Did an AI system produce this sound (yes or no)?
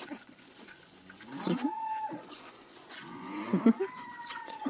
yes